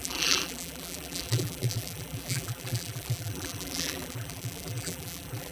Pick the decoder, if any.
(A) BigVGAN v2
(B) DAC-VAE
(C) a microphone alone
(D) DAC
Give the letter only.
A